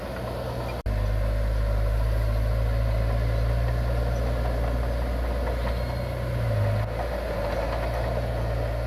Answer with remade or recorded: recorded